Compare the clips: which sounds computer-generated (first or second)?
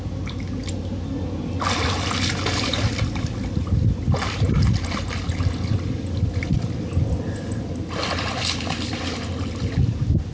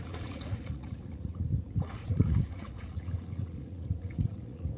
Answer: second